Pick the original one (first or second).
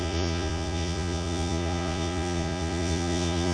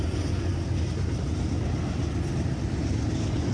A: second